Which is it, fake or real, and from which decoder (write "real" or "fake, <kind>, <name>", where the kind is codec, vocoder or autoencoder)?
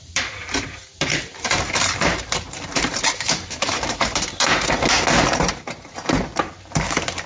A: fake, vocoder, BigVGAN v2